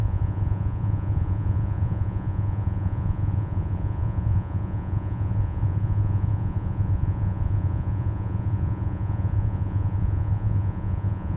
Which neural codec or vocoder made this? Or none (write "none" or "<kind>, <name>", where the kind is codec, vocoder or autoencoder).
vocoder, Vocos